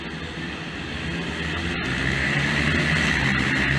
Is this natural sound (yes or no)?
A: yes